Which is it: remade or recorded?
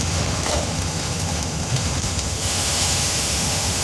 remade